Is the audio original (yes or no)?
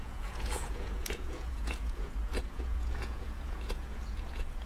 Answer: no